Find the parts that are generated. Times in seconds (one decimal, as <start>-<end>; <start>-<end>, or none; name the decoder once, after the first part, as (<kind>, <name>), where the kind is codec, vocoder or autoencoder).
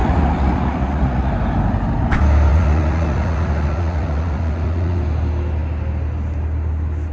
0.0-1.3 (vocoder, Vocos); 2.5-5.0